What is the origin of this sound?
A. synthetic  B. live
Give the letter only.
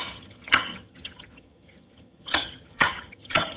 A